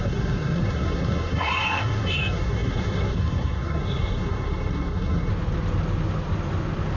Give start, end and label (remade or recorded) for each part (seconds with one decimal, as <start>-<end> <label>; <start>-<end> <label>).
0.0-5.3 remade; 5.3-7.0 recorded